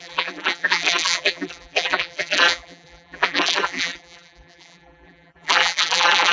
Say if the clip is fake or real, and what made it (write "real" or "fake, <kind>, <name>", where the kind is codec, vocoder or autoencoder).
fake, vocoder, BigVGAN v2